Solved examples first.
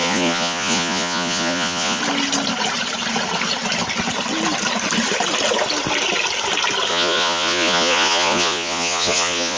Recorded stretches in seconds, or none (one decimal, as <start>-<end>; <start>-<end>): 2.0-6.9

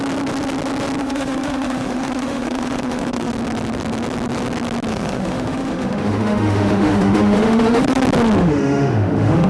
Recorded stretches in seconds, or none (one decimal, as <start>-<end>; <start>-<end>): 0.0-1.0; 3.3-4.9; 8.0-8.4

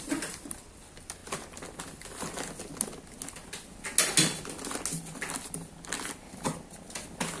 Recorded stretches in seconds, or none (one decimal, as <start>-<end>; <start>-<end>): 0.0-7.4

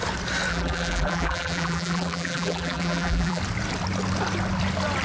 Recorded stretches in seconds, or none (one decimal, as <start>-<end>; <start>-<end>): 0.0-0.5; 3.4-5.0

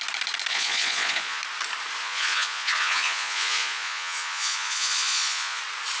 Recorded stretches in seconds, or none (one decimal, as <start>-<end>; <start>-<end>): 0.0-0.5; 1.4-2.0; 5.6-6.0

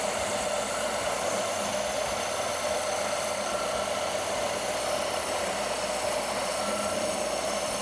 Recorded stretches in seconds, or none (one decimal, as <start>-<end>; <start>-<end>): 1.7-6.4